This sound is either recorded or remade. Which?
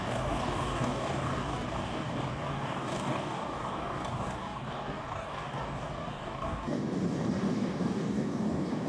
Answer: remade